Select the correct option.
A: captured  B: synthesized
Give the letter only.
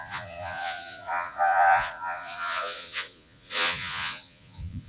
B